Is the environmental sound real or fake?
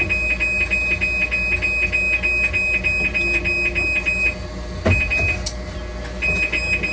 real